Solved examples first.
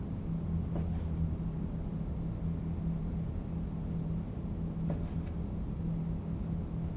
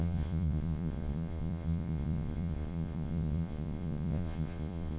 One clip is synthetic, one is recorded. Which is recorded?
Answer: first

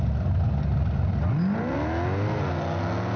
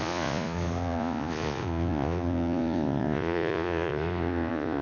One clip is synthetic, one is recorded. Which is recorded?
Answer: first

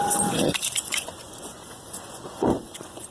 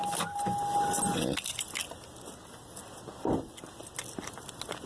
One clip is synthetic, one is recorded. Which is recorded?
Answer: second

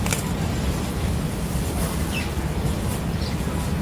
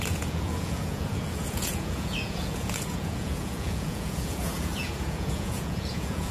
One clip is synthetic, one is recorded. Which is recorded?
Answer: first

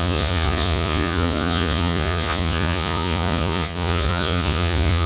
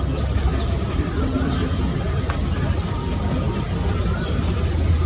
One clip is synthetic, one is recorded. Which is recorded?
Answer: second